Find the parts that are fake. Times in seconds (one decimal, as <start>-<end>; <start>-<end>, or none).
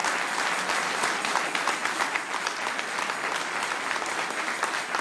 none